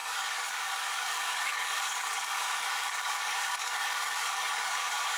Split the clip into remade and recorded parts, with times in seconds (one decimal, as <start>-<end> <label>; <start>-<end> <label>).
0.0-5.2 remade